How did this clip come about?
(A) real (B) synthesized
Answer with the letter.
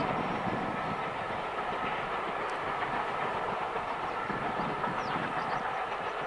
A